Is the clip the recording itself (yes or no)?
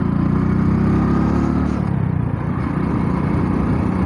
yes